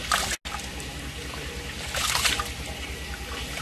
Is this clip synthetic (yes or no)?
no